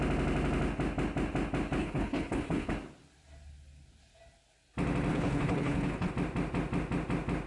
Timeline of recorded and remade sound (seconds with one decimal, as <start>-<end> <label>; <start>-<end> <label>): 0.0-1.8 recorded; 1.8-2.7 remade; 2.7-5.1 recorded; 5.1-6.1 remade; 6.1-7.5 recorded